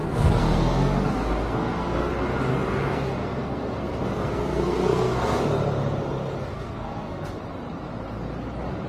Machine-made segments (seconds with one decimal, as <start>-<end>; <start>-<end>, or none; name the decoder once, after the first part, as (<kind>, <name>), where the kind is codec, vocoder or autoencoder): 0.0-2.1 (codec, SNAC); 2.5-5.4; 6.5-7.4